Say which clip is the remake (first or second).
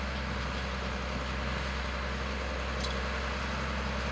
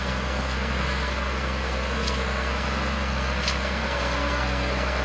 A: second